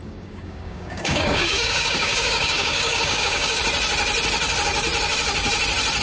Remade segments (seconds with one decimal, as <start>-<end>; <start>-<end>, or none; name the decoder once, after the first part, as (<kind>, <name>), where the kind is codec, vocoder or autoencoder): 0.0-3.6 (codec, DAC)